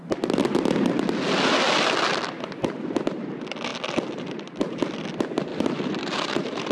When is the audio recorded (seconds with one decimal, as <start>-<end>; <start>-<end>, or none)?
0.0-5.5